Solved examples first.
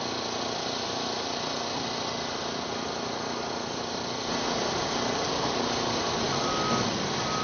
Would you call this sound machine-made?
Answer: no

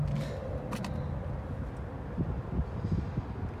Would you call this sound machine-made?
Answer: no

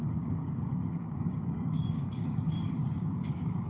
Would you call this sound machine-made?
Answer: yes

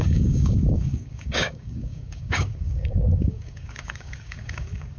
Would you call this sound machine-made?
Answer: yes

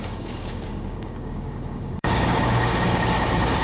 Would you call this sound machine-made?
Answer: yes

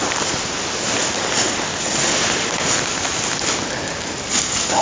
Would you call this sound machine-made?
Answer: no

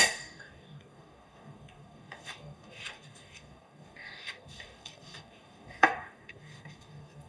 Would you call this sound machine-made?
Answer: yes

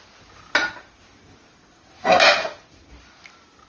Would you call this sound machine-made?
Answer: no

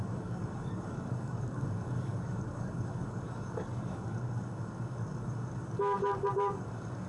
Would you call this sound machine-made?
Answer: yes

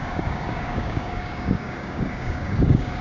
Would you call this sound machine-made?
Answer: yes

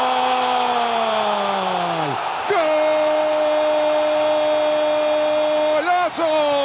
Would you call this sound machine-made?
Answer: no